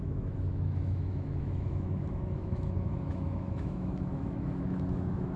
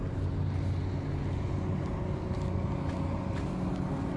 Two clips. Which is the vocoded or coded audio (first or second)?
first